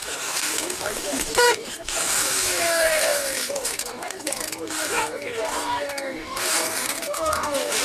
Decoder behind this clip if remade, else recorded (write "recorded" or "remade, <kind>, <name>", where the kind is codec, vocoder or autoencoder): remade, codec, DAC